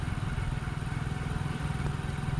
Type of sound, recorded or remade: recorded